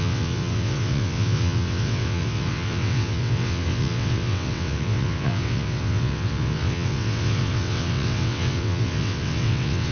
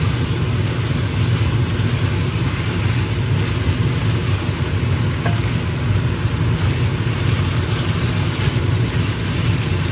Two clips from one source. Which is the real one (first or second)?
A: second